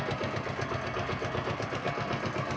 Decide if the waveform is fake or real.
fake